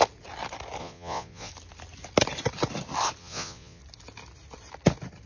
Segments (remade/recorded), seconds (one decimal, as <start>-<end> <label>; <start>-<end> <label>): 0.0-0.8 recorded; 0.8-1.5 remade; 1.5-3.2 recorded; 3.2-3.8 remade; 3.8-5.3 recorded